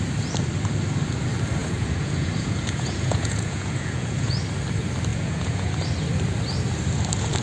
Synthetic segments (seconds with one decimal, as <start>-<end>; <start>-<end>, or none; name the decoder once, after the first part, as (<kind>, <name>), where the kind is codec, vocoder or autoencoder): 1.6-4.3 (vocoder, Vocos); 5.1-5.7